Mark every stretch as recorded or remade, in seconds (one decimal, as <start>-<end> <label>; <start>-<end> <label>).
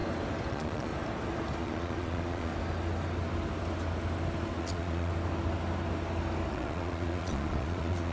0.0-0.5 recorded; 0.5-0.9 remade; 0.9-1.6 recorded; 1.6-2.5 remade; 2.5-4.6 recorded; 4.6-5.1 remade; 5.1-6.5 recorded; 6.5-8.1 remade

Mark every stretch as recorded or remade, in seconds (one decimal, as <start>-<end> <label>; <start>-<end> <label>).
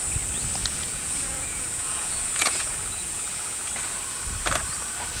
0.0-0.6 recorded; 0.6-3.7 remade; 3.7-5.2 recorded